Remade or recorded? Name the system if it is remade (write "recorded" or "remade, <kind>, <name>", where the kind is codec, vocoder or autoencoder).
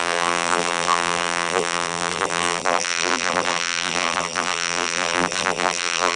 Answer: remade, vocoder, BigVGAN v2